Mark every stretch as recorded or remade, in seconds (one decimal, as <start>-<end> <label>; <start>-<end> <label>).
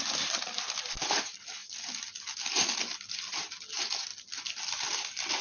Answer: 0.0-1.6 remade; 1.6-2.9 recorded; 2.9-4.1 remade; 4.1-4.6 recorded; 4.6-5.4 remade